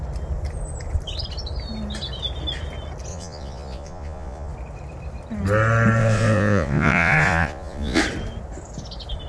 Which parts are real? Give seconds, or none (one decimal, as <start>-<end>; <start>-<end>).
0.0-3.1; 4.5-6.0; 8.0-9.3